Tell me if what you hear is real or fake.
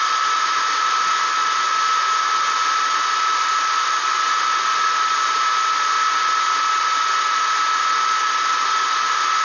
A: real